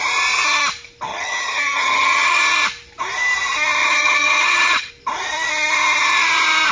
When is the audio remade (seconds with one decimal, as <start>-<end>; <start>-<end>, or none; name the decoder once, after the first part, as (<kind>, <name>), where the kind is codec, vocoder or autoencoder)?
1.1-2.4 (vocoder, HiFi-GAN); 3.8-4.9